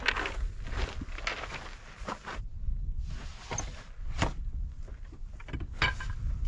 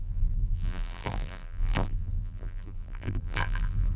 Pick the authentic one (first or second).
first